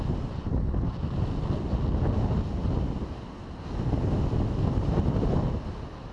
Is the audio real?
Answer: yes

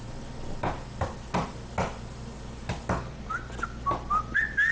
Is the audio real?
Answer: yes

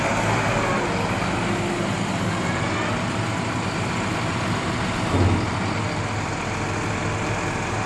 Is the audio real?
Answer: yes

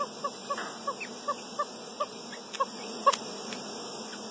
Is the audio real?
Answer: yes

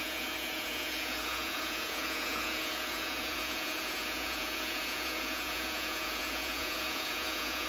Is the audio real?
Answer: no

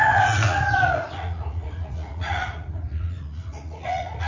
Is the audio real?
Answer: no